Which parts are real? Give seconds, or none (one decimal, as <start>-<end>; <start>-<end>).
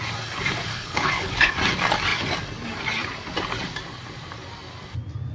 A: 0.0-0.7; 1.5-5.3